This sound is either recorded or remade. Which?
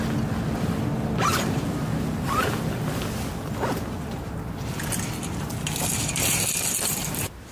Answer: recorded